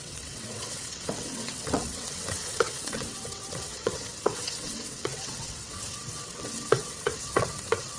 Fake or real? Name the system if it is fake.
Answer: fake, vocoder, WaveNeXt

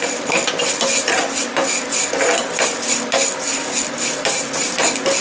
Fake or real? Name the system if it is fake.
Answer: real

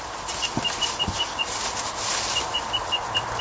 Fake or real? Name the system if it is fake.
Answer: real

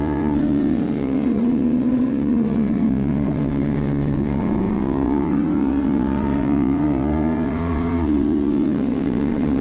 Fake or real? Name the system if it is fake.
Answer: fake, vocoder, WaveNeXt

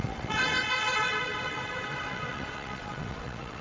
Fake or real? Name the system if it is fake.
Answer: fake, vocoder, WaveNeXt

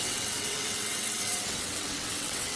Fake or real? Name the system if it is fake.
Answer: fake, vocoder, WaveNeXt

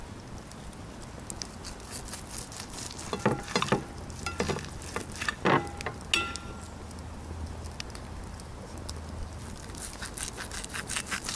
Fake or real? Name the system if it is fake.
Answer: real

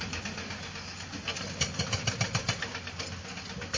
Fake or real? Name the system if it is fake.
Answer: real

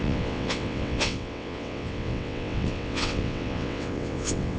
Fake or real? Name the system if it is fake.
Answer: fake, vocoder, WaveNeXt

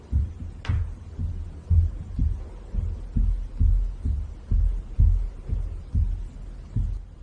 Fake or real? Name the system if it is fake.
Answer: real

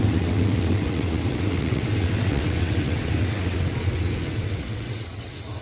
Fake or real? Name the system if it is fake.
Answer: fake, vocoder, WaveNeXt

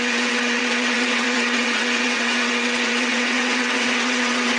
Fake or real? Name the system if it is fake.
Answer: fake, vocoder, WaveNeXt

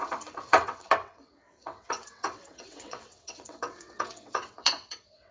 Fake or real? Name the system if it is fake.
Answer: fake, vocoder, WaveNeXt